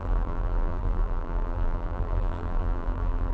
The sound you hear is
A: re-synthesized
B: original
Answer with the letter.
A